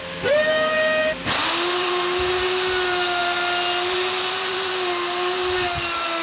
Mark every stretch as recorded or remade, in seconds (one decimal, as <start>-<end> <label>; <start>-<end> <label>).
0.0-6.2 recorded